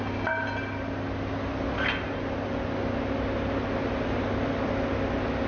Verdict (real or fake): real